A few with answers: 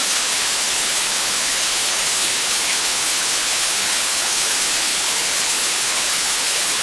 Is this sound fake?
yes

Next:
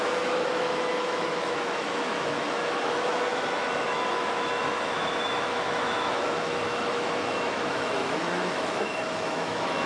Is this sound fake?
yes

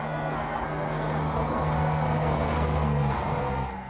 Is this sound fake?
yes